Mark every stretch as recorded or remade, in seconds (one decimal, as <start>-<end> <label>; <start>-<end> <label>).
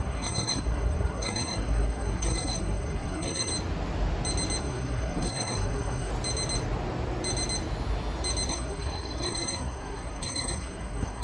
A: 0.0-3.5 remade; 3.5-4.6 recorded; 4.6-6.1 remade; 6.1-8.5 recorded; 8.5-11.2 remade